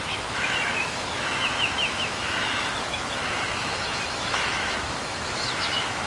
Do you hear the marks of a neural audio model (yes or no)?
yes